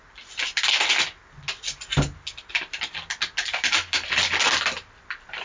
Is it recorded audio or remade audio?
recorded